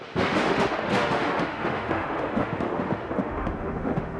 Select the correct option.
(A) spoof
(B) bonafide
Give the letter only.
A